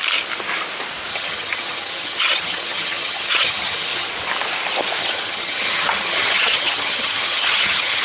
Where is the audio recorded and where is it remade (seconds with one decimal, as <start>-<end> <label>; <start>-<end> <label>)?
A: 0.0-1.1 recorded; 1.1-4.1 remade; 4.1-5.0 recorded; 5.0-8.0 remade